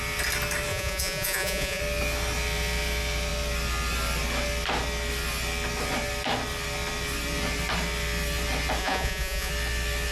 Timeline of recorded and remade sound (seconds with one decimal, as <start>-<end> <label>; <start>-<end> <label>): 0.0-0.7 recorded; 0.7-1.8 remade; 1.8-8.8 recorded; 8.8-9.5 remade; 9.5-10.1 recorded